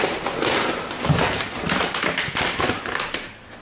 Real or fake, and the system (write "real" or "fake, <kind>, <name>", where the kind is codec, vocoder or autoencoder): fake, vocoder, BigVGAN v2